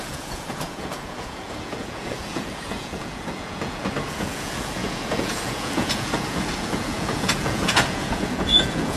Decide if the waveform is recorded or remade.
remade